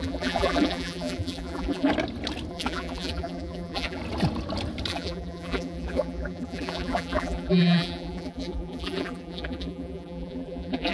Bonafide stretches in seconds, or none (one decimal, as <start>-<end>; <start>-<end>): 1.9-2.5; 4.0-4.9

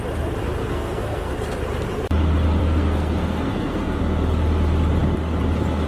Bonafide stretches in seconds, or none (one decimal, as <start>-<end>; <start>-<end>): 0.0-0.6; 1.3-2.6; 4.0-5.9

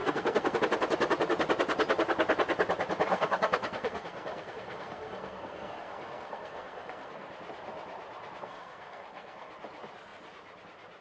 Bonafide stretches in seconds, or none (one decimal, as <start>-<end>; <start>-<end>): 0.6-3.1; 7.3-8.4; 9.5-11.0

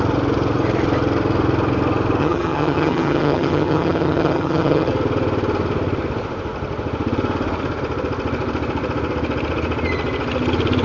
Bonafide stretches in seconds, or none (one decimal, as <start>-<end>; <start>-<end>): 0.0-2.2; 4.9-10.8

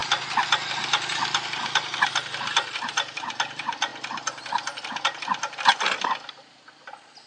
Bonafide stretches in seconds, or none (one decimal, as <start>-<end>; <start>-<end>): 0.0-7.3

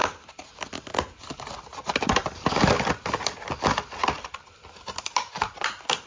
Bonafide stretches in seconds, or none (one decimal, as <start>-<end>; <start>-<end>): 2.5-4.0; 4.6-6.1

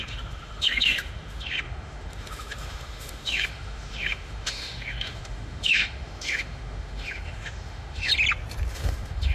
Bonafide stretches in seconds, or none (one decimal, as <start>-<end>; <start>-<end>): 8.1-8.7